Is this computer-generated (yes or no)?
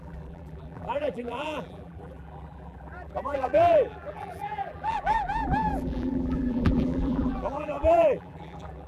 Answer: yes